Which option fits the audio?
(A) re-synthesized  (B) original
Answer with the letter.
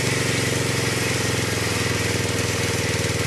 B